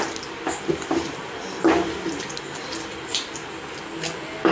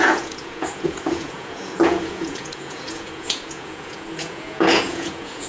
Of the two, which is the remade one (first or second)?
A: second